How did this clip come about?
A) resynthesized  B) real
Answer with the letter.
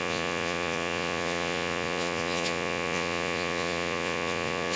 A